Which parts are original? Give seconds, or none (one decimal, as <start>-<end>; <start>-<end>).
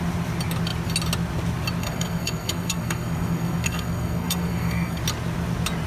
0.0-1.8; 5.0-5.9